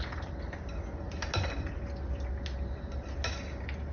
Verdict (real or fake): real